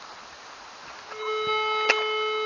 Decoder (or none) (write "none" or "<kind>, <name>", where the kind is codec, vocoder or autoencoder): none